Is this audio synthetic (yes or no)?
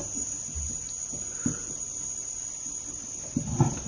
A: no